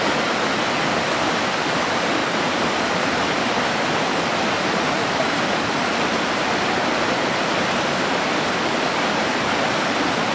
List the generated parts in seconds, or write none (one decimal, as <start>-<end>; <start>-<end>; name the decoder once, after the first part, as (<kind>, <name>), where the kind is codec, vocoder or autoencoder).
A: 2.2-3.8 (vocoder, BigVGAN v2); 5.0-8.6